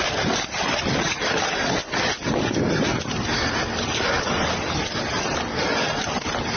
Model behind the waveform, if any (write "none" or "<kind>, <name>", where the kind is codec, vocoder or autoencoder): none